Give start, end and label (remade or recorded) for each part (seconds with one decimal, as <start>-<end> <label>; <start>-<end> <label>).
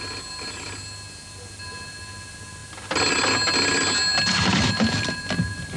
0.0-5.8 recorded